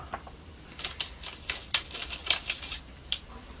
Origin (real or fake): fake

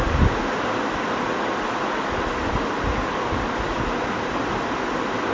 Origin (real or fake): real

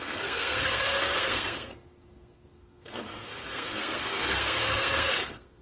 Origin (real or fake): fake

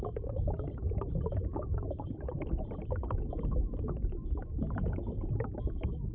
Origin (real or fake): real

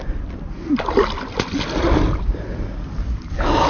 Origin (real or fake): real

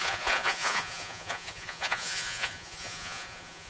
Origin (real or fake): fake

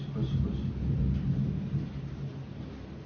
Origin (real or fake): real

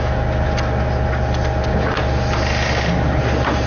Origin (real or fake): real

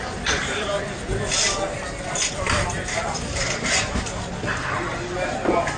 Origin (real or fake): real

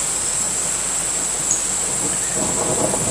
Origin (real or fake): real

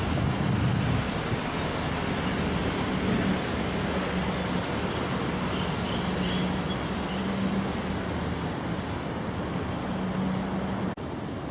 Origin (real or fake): real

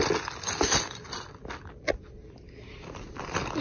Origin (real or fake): real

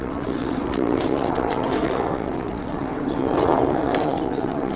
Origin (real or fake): fake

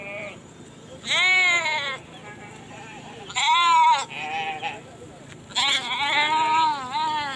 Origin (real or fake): real